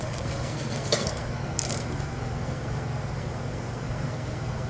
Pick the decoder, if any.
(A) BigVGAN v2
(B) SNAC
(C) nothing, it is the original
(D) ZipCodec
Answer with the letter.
B